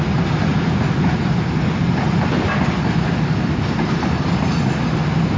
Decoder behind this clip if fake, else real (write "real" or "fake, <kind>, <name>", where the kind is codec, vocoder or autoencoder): real